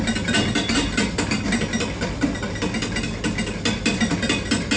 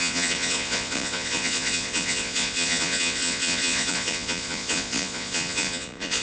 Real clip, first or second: first